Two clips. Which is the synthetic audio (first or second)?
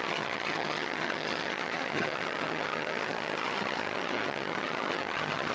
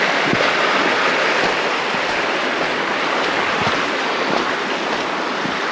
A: first